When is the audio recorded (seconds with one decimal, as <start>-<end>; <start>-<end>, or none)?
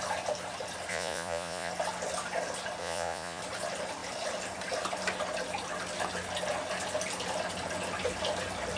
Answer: 0.0-0.9; 1.7-2.8; 3.4-8.8